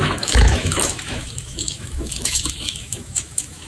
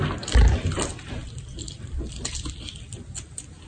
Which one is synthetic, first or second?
first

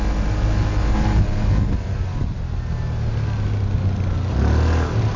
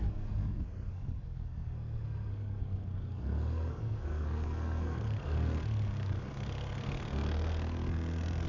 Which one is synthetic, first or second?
second